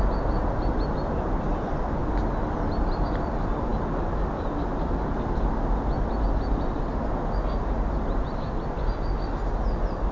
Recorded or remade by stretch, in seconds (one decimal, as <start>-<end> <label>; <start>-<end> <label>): 0.0-10.1 recorded

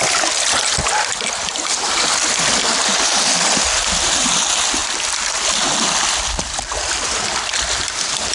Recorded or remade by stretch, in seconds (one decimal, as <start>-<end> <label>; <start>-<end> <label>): 0.0-8.3 recorded